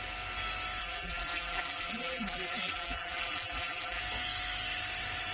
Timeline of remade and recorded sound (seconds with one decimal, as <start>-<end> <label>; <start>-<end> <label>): 0.0-0.8 recorded; 0.8-4.0 remade; 4.0-5.3 recorded